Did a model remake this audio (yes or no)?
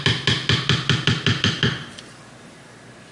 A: no